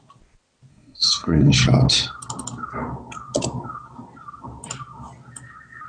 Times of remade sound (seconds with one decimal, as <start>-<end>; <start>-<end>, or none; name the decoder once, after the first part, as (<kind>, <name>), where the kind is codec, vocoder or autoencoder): 0.7-1.5 (codec, SNAC)